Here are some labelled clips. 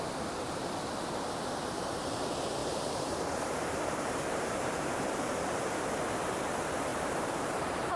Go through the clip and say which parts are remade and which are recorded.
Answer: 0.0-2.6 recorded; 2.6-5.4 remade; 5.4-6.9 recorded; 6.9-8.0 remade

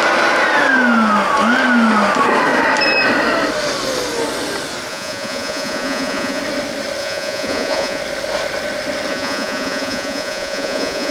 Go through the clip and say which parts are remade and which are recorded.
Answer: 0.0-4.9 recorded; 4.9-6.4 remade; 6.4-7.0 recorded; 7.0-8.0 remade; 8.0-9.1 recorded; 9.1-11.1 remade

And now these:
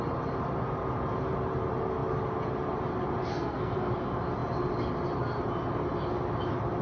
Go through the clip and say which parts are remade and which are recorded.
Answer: 0.0-3.3 recorded; 3.3-3.9 remade; 3.9-6.8 recorded